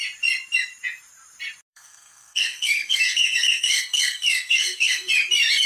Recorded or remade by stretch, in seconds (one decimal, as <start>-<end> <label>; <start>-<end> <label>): 0.0-1.7 recorded; 1.7-5.1 remade; 5.1-5.7 recorded